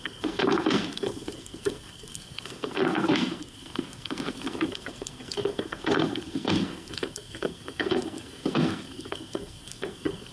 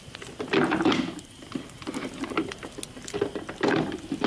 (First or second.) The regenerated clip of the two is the first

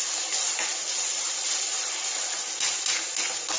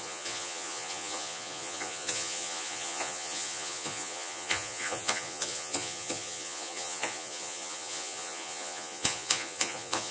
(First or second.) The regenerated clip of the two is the second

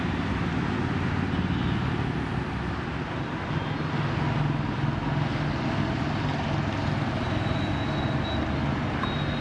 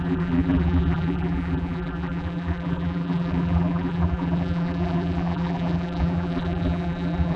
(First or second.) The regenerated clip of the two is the second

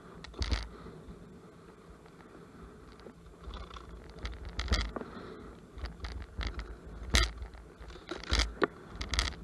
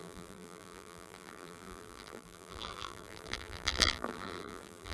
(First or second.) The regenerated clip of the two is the second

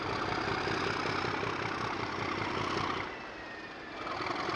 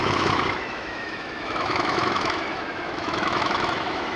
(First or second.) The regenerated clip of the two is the second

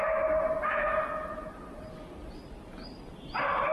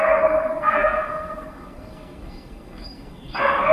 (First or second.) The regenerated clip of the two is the second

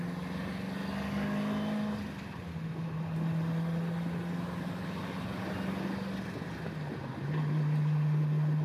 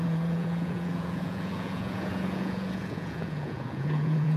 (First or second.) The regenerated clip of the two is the second